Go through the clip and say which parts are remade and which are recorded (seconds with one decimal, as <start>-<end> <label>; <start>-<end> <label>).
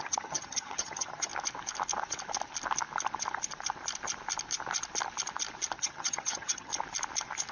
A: 0.0-1.3 remade; 1.3-5.8 recorded; 5.8-6.7 remade; 6.7-7.5 recorded